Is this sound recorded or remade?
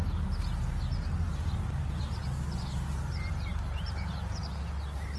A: recorded